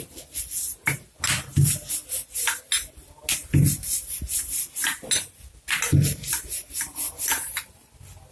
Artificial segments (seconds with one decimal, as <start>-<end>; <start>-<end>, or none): none